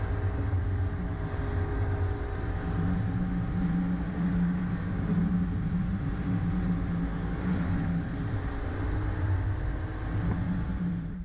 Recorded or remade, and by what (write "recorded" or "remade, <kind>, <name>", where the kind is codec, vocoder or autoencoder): recorded